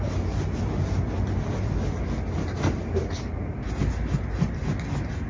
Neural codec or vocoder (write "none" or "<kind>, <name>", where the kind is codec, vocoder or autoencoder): none